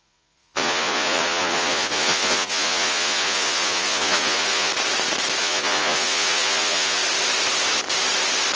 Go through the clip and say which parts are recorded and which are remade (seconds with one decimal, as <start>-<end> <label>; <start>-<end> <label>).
0.0-4.7 remade; 4.7-5.4 recorded; 5.4-7.0 remade; 7.0-8.6 recorded